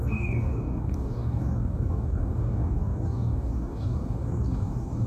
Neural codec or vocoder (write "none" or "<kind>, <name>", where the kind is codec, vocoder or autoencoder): codec, DAC